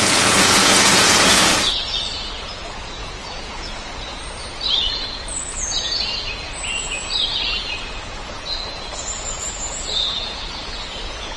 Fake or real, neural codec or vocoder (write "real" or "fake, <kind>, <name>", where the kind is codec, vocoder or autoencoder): fake, vocoder, Vocos